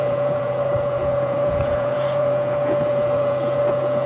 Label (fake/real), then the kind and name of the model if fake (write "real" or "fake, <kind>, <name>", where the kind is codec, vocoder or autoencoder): fake, vocoder, Vocos